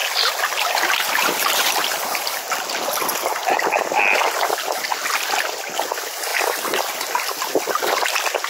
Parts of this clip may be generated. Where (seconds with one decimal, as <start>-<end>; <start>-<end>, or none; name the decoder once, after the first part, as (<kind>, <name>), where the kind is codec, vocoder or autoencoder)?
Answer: none